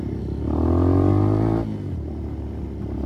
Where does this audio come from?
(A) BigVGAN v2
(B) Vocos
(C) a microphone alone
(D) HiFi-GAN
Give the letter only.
C